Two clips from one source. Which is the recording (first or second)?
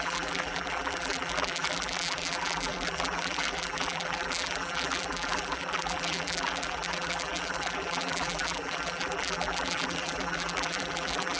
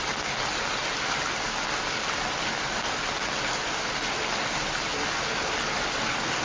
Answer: second